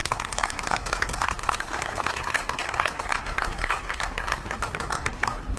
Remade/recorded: remade